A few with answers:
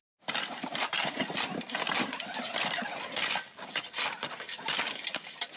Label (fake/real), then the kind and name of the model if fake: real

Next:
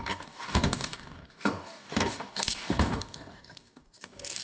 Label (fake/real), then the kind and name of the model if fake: fake, codec, DAC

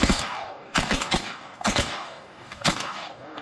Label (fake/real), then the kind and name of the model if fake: fake, codec, DAC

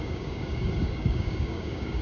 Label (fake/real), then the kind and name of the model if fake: fake, codec, DAC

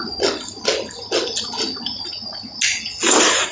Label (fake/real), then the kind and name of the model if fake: real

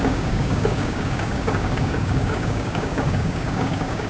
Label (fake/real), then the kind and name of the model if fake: fake, codec, DAC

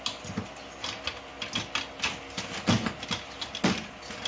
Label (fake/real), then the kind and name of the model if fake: real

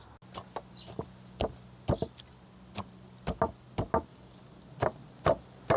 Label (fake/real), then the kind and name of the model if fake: real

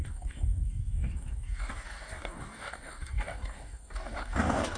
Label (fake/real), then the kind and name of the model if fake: fake, codec, DAC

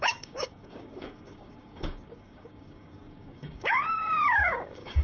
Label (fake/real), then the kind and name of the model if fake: fake, codec, DAC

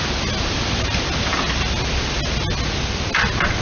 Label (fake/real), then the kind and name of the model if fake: real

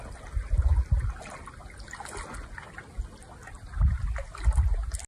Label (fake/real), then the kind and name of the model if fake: real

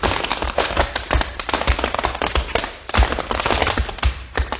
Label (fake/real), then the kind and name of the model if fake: real